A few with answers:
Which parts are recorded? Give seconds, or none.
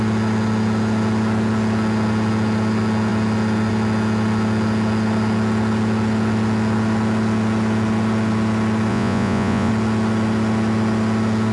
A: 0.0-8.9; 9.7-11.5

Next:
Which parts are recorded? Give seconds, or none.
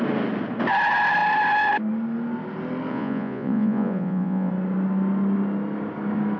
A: 0.0-2.9; 4.5-6.4